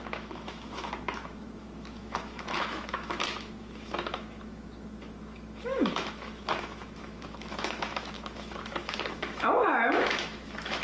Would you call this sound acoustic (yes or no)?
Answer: no